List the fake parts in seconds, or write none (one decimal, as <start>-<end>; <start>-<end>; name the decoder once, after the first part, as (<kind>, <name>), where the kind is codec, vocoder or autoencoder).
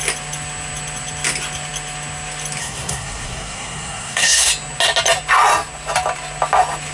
2.6-4.5 (codec, SNAC)